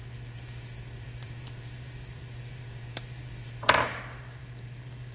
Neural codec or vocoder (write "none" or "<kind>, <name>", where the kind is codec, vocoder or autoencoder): vocoder, BigVGAN v2